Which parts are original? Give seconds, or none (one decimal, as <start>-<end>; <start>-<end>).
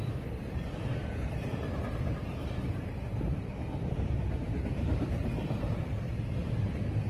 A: 6.4-7.1